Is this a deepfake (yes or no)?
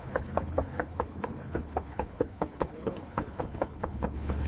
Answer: yes